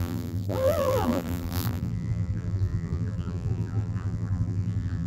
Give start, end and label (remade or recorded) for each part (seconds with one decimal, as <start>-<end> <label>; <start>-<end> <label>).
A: 0.0-5.1 remade